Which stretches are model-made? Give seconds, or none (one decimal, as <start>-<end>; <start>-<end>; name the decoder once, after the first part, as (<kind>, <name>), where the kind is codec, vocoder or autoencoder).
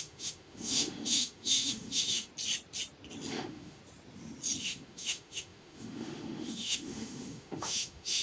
0.0-2.3 (autoencoder, DAC-VAE); 3.3-3.8; 4.6-8.2